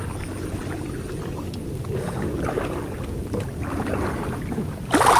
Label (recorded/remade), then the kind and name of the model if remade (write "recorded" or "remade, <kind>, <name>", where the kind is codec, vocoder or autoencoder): recorded